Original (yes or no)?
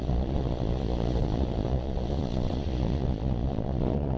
no